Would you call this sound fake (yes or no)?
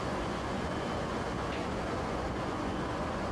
yes